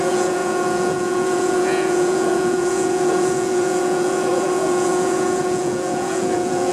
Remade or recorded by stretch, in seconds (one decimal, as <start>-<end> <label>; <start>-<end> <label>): 0.0-6.7 remade